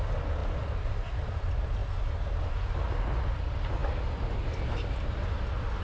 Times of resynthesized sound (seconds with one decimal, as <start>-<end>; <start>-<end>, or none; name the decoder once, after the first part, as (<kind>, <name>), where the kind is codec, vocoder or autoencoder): none